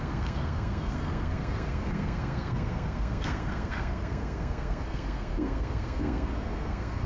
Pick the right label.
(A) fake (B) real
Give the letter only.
A